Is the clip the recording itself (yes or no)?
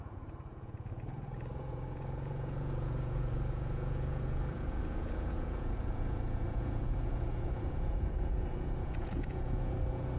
no